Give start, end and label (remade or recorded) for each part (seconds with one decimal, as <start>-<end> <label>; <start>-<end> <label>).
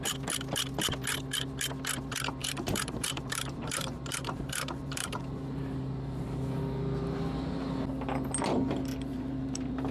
0.0-2.4 recorded; 2.4-6.6 remade; 6.6-8.9 recorded; 8.9-9.9 remade